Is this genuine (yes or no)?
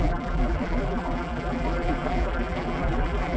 no